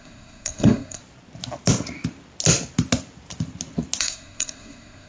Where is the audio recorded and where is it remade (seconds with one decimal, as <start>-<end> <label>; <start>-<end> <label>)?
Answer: 0.0-1.0 remade; 1.0-4.0 recorded; 4.0-5.1 remade